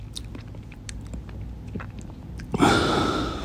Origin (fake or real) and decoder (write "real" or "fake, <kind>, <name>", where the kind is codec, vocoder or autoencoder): real